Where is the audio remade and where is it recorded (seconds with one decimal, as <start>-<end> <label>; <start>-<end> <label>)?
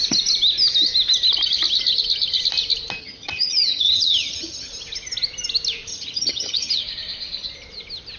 0.0-3.0 recorded; 3.0-4.7 remade; 4.7-5.9 recorded; 5.9-6.8 remade; 6.8-8.2 recorded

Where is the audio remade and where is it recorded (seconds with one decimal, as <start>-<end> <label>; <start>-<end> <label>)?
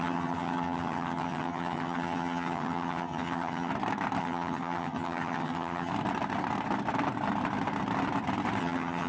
0.0-3.7 remade; 3.7-4.2 recorded; 4.2-5.9 remade; 5.9-8.6 recorded; 8.6-9.1 remade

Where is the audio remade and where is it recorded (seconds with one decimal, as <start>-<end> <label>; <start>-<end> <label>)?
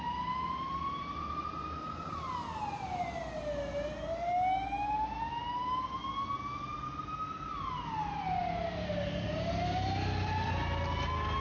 0.0-11.4 recorded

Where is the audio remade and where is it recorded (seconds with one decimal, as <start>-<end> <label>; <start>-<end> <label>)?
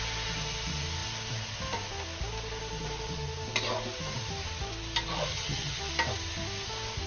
0.0-5.3 recorded; 5.3-5.8 remade; 5.8-7.1 recorded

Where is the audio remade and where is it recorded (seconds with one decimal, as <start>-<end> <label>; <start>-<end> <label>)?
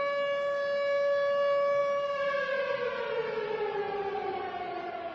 0.0-5.1 recorded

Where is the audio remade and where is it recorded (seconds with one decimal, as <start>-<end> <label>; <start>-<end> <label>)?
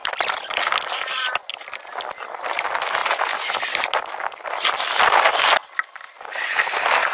0.0-7.1 recorded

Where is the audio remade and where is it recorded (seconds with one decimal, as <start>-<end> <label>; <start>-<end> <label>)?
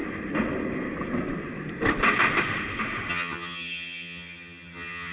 0.0-3.1 recorded; 3.1-5.1 remade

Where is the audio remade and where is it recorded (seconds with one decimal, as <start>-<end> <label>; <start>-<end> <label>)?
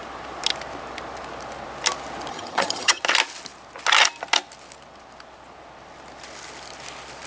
0.0-2.3 recorded; 2.3-3.0 remade; 3.0-7.3 recorded